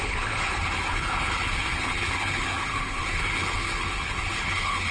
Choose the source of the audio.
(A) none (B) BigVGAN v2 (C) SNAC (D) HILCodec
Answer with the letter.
D